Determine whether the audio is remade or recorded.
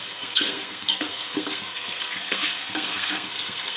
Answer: remade